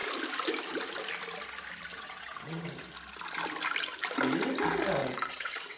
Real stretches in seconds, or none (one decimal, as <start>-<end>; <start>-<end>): 0.0-1.9; 2.6-5.0